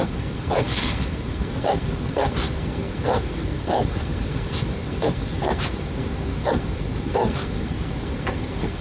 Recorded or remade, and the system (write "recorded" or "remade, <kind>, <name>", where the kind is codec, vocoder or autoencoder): remade, codec, SNAC